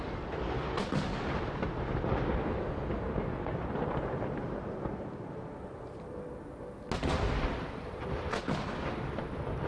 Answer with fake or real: real